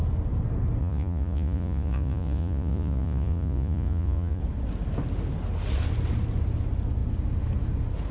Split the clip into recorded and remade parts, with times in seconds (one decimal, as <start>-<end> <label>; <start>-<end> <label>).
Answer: 0.0-0.8 recorded; 0.8-4.4 remade; 4.4-8.1 recorded